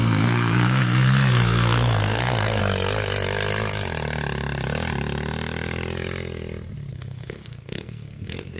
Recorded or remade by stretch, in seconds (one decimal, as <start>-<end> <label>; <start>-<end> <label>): 0.0-2.6 remade; 2.6-6.9 recorded; 6.9-8.6 remade